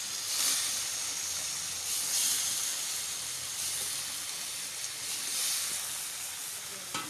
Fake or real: real